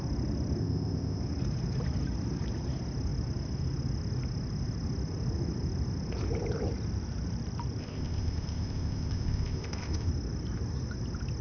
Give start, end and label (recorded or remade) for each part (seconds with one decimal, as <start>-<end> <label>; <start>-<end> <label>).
0.0-0.6 recorded; 0.6-1.2 remade; 1.2-7.8 recorded; 7.8-10.1 remade; 10.1-11.4 recorded